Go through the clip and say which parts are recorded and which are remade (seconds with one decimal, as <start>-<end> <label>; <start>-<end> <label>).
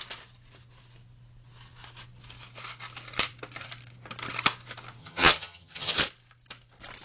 0.0-5.0 recorded; 5.0-6.0 remade; 6.0-7.0 recorded